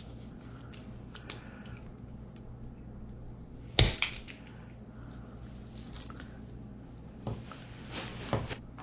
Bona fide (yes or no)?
yes